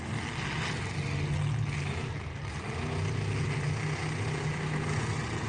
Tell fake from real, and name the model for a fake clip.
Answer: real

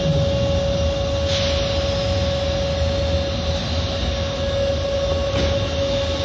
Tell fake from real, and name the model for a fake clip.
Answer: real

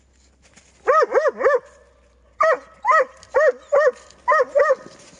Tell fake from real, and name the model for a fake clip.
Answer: real